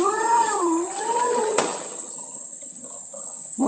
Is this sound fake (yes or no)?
yes